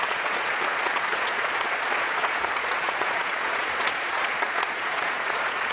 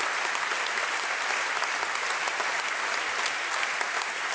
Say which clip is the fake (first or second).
first